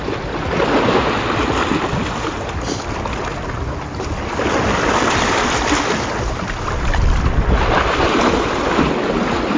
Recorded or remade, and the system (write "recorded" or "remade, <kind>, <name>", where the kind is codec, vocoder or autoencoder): recorded